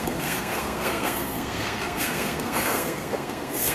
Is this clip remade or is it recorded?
remade